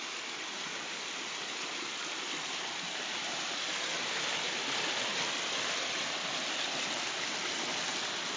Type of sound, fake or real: real